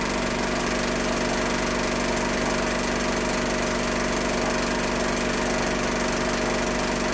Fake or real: real